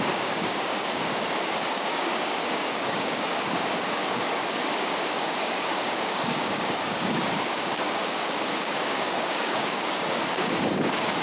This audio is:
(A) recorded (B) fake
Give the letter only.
B